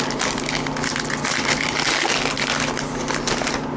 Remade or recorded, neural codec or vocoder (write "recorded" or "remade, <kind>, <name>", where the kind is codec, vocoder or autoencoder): recorded